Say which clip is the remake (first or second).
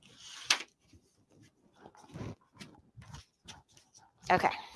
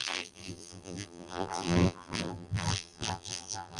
second